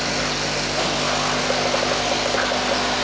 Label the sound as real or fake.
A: real